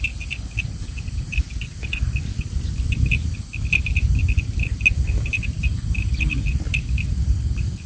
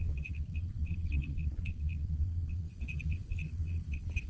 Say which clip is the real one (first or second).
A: first